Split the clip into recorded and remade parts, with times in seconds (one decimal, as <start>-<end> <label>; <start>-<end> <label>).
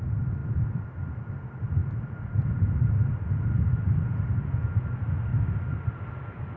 0.0-6.6 recorded